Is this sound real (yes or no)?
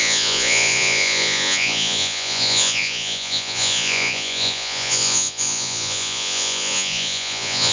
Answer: no